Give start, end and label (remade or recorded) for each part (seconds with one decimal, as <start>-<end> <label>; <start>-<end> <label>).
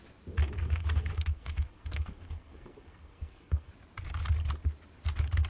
0.0-0.4 recorded; 0.4-3.7 remade; 3.7-5.5 recorded